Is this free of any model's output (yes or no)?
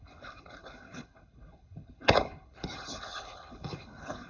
no